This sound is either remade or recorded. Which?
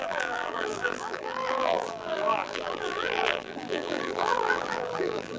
remade